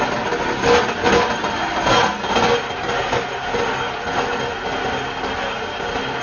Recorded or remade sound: recorded